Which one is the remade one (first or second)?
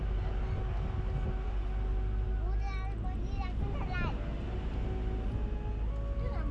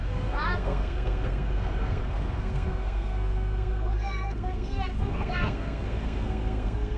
second